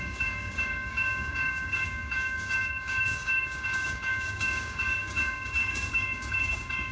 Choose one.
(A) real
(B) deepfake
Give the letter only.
B